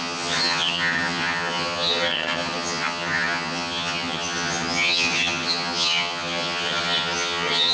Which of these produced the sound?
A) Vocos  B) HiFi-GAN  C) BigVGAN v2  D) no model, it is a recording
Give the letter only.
B